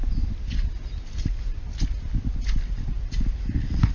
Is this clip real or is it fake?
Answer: real